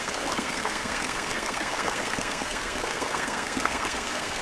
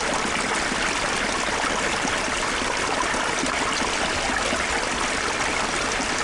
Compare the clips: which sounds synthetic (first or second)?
first